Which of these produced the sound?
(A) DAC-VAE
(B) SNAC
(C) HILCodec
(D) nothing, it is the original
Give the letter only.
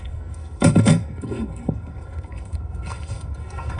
B